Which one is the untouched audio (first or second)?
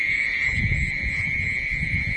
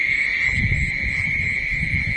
second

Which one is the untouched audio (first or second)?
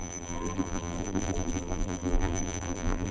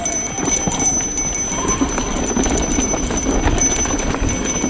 second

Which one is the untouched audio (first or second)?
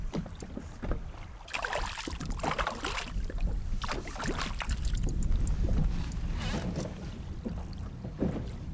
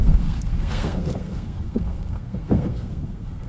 first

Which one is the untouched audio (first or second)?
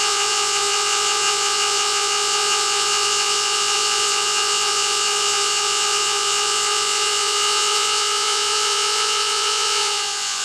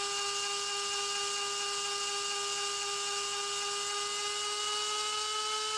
second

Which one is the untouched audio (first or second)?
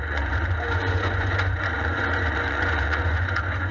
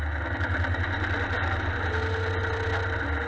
second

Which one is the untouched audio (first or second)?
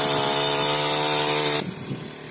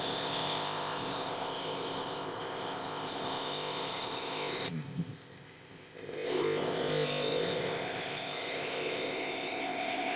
first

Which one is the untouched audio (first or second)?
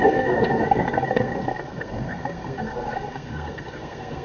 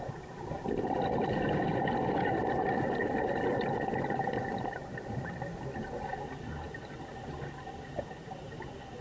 second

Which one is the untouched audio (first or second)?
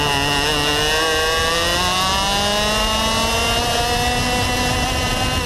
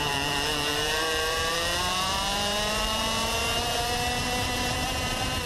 first